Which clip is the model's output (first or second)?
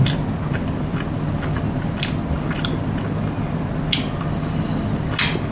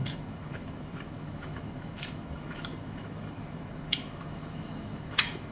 second